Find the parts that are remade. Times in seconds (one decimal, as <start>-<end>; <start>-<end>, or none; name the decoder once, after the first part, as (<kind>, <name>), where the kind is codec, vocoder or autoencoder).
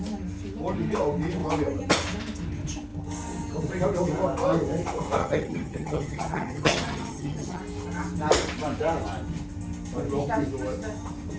5.2-7.6 (vocoder, HiFi-GAN)